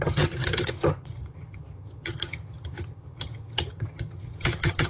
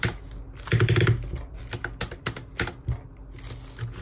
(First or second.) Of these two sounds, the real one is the second